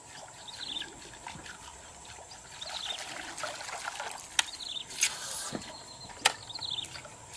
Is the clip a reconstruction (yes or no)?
no